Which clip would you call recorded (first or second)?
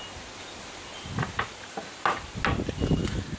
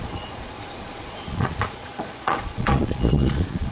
first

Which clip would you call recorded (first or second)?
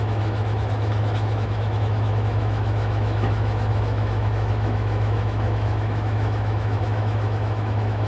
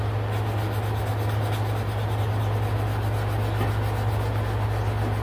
second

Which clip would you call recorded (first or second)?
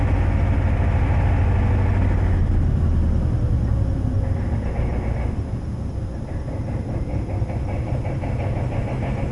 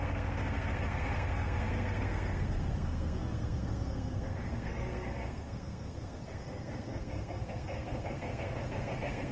first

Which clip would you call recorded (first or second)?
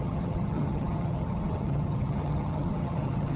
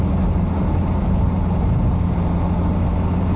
second